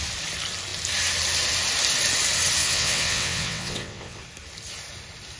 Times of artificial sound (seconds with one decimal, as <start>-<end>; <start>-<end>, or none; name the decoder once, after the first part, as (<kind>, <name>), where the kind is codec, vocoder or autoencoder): 2.6-4.2 (vocoder, WaveNeXt)